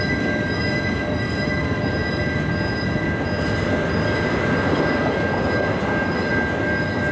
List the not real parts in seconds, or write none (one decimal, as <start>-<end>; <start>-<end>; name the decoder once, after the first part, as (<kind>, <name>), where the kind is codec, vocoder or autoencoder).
none